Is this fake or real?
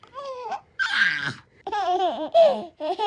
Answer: fake